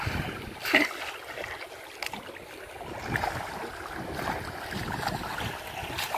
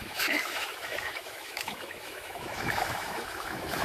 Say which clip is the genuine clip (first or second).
first